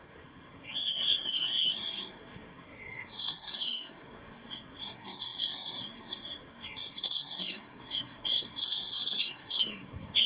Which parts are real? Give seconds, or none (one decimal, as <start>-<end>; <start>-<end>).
none